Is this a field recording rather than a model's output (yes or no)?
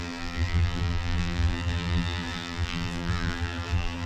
no